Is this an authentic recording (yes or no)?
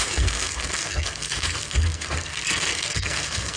no